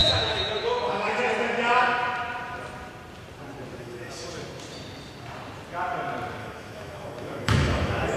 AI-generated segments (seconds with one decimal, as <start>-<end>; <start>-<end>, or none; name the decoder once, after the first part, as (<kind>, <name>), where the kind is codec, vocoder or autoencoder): 0.0-1.2 (autoencoder, DAC-VAE); 3.8-4.3; 6.4-8.2